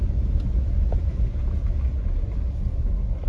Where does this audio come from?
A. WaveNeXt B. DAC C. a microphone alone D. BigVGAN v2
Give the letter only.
C